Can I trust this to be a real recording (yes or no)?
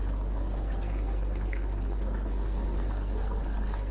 no